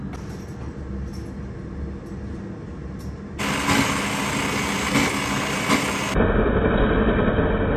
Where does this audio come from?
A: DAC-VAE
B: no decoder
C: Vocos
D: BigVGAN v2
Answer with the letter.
B